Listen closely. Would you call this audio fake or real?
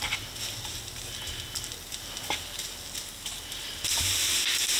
real